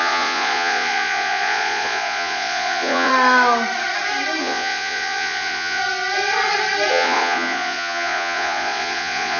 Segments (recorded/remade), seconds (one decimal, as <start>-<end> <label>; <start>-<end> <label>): 0.0-3.1 remade; 3.1-4.4 recorded; 4.4-5.8 remade; 5.8-6.9 recorded; 6.9-9.4 remade